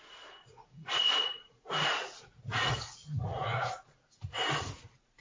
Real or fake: fake